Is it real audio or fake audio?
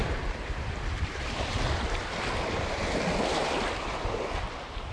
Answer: fake